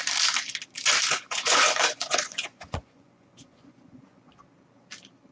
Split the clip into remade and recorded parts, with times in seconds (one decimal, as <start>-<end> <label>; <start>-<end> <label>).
0.0-1.1 recorded; 1.1-4.3 remade; 4.3-5.3 recorded